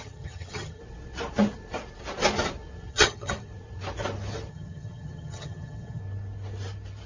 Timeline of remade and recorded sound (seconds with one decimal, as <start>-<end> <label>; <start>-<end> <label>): 0.0-0.8 remade; 0.8-2.9 recorded; 2.9-3.5 remade; 3.5-4.5 recorded; 4.5-6.0 remade; 6.0-7.1 recorded